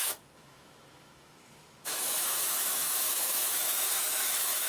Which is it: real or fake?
fake